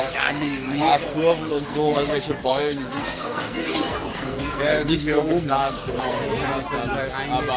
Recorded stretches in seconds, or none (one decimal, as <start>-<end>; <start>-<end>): 6.2-7.6

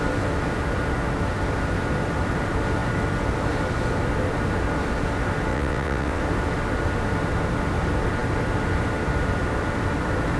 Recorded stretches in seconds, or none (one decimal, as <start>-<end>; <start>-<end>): 0.0-5.5; 6.2-10.4

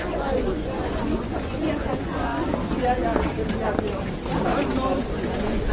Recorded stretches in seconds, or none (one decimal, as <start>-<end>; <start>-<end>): 2.3-5.0

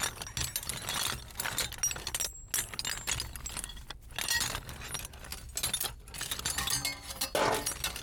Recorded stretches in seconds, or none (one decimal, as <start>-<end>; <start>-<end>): 0.0-8.0

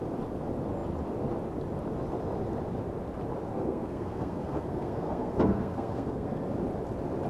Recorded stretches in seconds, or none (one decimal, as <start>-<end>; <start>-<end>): 0.0-3.5; 6.5-7.3

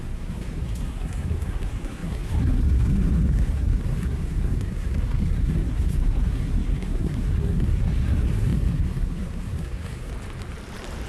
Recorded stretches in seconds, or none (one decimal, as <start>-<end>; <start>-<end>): 10.1-11.1

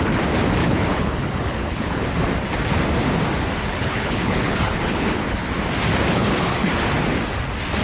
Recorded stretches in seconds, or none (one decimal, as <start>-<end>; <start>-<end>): 0.0-0.6; 2.0-3.7; 5.5-6.1; 6.7-7.8